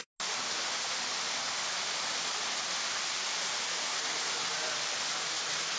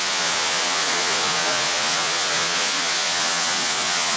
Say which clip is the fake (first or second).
second